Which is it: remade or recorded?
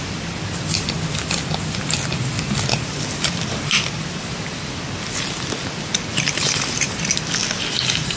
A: recorded